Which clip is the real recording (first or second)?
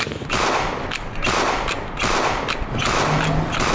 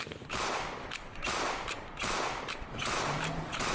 first